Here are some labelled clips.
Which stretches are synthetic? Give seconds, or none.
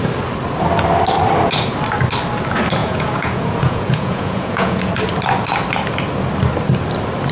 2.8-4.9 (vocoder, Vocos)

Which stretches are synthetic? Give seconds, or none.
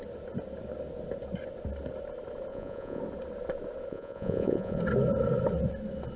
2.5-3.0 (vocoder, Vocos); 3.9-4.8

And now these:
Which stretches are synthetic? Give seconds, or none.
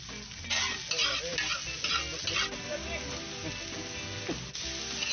none